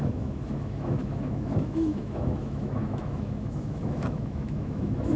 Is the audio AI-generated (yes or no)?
yes